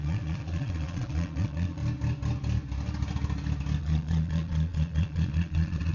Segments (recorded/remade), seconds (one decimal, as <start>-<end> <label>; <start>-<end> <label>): 0.0-1.8 remade; 1.8-3.8 recorded; 3.8-5.9 remade